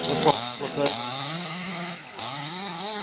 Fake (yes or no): yes